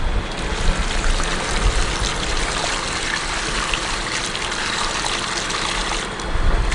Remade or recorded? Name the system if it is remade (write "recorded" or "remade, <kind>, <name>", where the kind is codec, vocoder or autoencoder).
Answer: recorded